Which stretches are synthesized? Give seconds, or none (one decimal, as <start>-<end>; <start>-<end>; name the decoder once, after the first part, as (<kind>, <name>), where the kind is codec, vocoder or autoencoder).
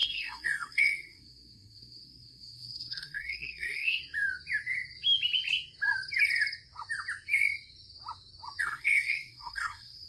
0.0-4.0 (codec, SNAC); 8.6-10.1